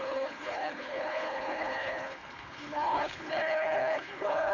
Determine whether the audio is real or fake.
fake